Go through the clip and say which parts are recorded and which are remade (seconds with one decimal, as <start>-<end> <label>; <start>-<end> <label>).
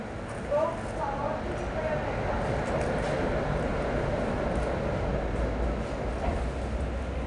0.0-7.3 recorded